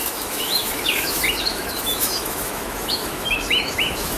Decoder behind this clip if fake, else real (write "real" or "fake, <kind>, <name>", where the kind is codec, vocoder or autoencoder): fake, autoencoder, DAC-VAE